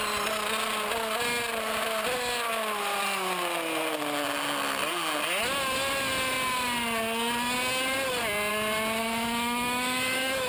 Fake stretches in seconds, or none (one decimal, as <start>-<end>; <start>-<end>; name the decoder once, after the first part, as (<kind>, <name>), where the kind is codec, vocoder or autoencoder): 9.0-10.5 (autoencoder, DAC-VAE)